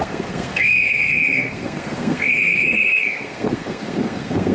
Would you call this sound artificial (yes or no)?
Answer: yes